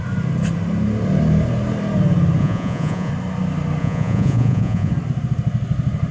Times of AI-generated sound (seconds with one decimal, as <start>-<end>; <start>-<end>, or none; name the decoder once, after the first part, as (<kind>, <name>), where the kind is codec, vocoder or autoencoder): 2.4-3.1 (vocoder, Vocos); 3.8-4.9